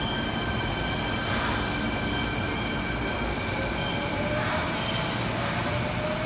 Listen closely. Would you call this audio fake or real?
real